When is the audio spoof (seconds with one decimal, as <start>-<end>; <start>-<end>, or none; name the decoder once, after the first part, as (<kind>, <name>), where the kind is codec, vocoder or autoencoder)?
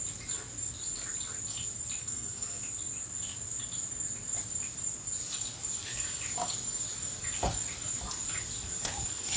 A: 2.0-2.6 (codec, SNAC)